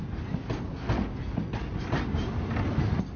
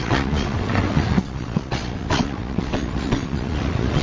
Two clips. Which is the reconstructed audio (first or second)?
second